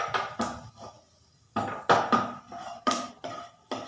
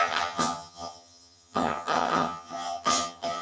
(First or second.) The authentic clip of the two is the first